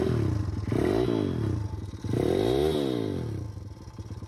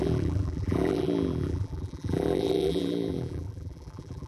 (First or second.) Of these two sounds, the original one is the first